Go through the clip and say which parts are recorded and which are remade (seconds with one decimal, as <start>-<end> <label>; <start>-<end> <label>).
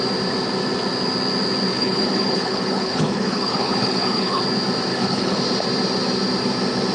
0.0-1.7 recorded; 1.7-4.4 remade; 4.4-4.9 recorded; 4.9-5.4 remade; 5.4-6.9 recorded